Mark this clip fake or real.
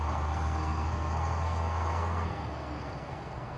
fake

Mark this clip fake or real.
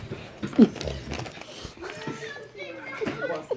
real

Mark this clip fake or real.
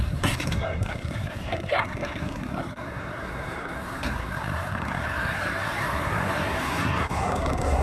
fake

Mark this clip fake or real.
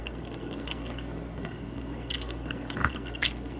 fake